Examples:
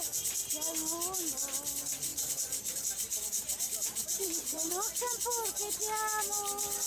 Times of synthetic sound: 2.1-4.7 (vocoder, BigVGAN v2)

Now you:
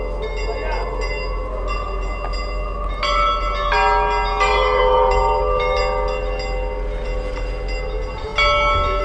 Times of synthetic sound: 4.5-5.8 (vocoder, BigVGAN v2)

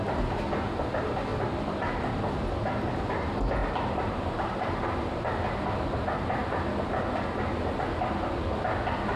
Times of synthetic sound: 1.3-2.1 (vocoder, BigVGAN v2); 3.6-5.3

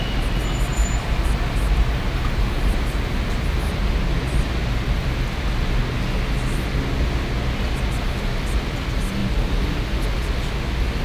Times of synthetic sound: 0.7-3.9 (vocoder, BigVGAN v2); 9.2-9.8